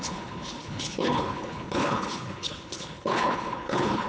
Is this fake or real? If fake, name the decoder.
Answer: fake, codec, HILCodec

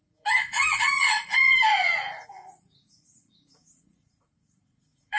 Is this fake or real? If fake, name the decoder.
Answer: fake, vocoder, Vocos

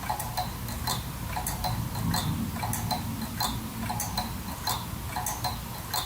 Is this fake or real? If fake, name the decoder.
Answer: real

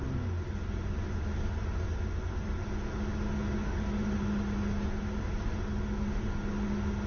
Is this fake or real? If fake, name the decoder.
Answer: real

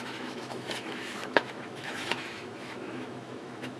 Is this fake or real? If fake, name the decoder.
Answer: fake, autoencoder, DAC-VAE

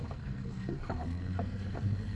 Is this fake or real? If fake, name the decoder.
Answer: fake, codec, SNAC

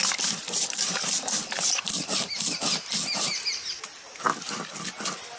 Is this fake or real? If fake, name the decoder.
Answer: real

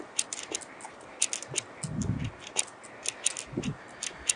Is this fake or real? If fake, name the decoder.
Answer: real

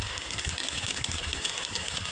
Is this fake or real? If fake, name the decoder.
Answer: fake, codec, SNAC